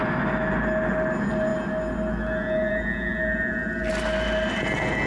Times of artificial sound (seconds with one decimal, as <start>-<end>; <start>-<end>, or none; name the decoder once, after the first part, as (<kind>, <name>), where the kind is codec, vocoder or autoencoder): none